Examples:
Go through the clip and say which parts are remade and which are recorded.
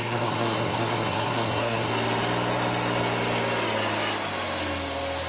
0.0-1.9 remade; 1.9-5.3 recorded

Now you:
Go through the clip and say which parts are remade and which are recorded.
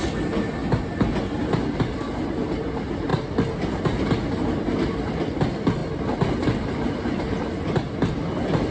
0.0-8.7 recorded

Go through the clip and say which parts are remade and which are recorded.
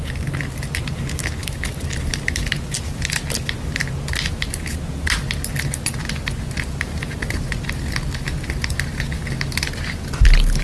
0.0-10.6 recorded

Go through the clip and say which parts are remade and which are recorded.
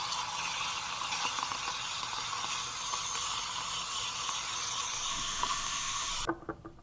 0.0-5.1 recorded; 5.1-6.1 remade; 6.1-6.8 recorded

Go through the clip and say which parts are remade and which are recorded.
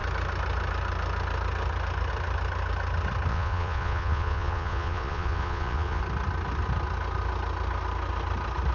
0.0-3.3 recorded; 3.3-6.0 remade; 6.0-8.7 recorded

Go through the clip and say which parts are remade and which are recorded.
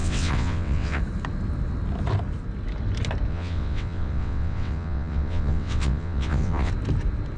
0.0-1.0 remade; 1.0-3.3 recorded; 3.3-6.7 remade; 6.7-7.4 recorded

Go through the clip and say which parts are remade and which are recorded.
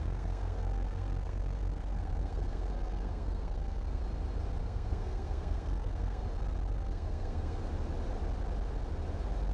0.0-4.0 remade; 4.0-4.6 recorded; 4.6-6.2 remade; 6.2-6.7 recorded; 6.7-7.6 remade; 7.6-9.5 recorded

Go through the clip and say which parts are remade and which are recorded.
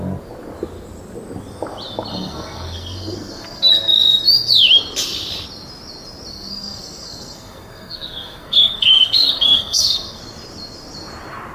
0.0-2.1 recorded; 2.1-3.7 remade; 3.7-6.3 recorded; 6.3-10.2 remade; 10.2-11.5 recorded